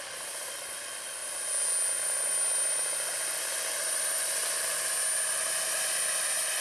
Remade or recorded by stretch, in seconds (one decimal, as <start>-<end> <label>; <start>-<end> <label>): 0.0-6.6 recorded